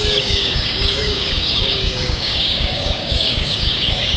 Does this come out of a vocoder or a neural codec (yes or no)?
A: yes